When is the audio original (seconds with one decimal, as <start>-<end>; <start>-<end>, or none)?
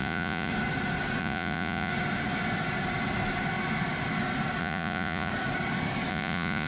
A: 0.5-1.2; 1.9-4.6; 5.3-6.1